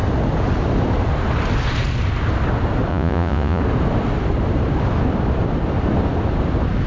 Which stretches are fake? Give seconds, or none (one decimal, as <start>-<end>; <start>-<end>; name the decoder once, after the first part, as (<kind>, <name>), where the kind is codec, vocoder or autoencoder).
2.9-3.6 (vocoder, Vocos)